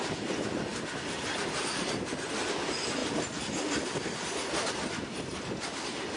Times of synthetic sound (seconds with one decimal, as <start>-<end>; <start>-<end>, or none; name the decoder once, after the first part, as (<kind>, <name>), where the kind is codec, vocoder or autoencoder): none

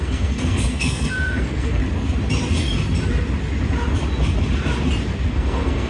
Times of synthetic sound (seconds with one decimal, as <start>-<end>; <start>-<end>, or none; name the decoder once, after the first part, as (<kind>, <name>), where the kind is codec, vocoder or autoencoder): 0.0-1.8 (codec, SNAC); 5.3-5.9

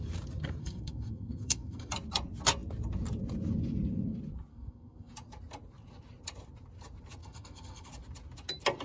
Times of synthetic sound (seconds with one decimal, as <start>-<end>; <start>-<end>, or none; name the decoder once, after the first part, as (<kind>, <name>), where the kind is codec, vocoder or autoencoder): 0.6-1.9 (codec, SNAC); 4.5-5.1; 7.2-7.9

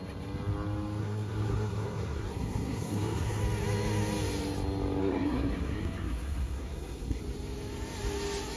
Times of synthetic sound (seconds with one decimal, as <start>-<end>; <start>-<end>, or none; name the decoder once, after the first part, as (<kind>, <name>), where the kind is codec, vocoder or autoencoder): 1.0-3.4 (codec, SNAC); 5.0-7.2